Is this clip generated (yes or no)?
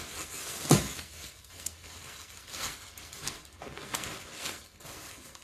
yes